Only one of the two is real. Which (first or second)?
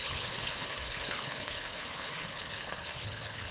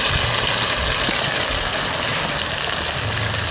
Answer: second